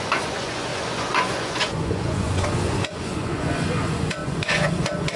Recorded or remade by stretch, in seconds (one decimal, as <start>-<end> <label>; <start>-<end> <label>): 0.0-5.2 remade